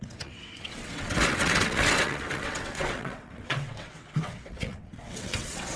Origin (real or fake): fake